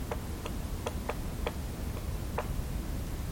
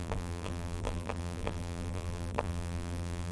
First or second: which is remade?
second